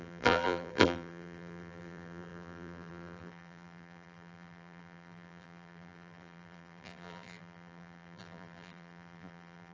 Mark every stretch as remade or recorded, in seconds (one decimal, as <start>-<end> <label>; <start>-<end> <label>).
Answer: 0.0-9.7 remade